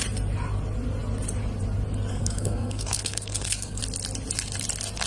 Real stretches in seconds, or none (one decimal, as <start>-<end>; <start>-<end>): 0.0-2.1; 3.8-5.1